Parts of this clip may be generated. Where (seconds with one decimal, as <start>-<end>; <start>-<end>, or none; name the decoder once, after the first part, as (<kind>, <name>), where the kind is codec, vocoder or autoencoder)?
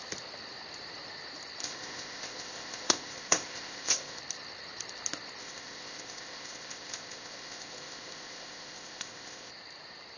1.6-4.2 (codec, ZipCodec); 5.4-9.5